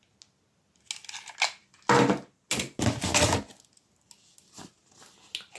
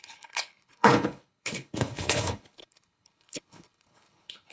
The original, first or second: first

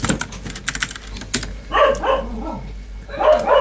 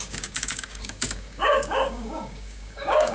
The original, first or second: first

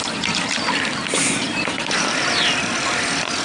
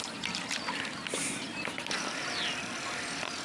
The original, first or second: second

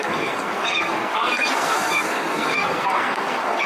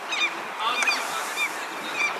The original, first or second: second